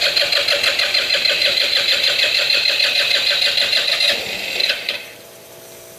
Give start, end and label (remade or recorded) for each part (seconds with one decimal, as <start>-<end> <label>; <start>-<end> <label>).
0.0-1.4 recorded; 1.4-2.7 remade; 2.7-4.6 recorded; 4.6-5.5 remade; 5.5-6.0 recorded